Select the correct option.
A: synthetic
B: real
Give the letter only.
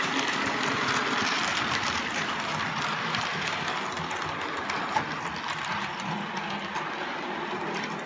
A